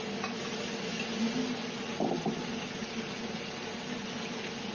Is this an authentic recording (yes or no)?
yes